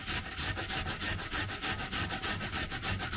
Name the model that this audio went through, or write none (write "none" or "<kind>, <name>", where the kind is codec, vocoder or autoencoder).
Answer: none